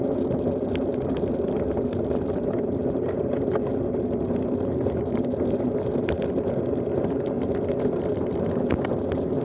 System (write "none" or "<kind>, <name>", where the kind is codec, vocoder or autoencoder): none